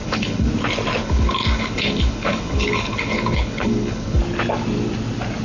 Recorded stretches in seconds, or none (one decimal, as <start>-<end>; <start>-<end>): 0.5-1.0; 4.2-5.4